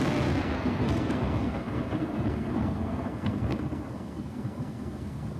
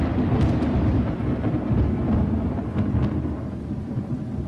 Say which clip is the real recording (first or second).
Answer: second